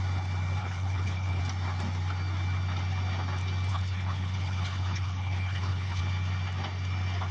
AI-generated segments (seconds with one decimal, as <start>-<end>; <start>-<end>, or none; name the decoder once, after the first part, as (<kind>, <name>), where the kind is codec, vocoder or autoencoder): 0.6-1.4 (codec, HILCodec); 3.7-6.0